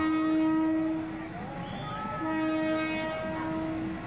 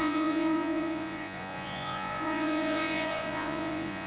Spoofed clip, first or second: second